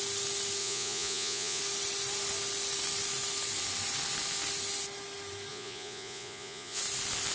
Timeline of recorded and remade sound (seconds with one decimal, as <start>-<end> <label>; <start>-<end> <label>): 0.0-0.6 recorded; 0.6-1.6 remade; 1.6-5.5 recorded; 5.5-6.8 remade; 6.8-7.3 recorded